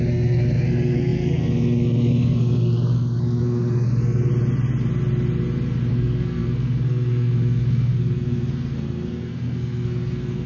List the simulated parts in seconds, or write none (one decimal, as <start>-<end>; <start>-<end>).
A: 0.0-4.3; 5.9-10.5